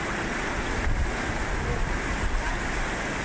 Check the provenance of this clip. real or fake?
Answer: real